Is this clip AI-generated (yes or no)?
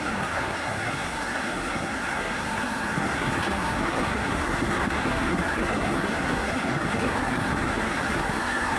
yes